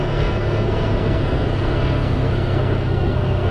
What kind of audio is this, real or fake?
fake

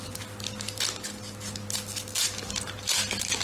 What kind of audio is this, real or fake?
real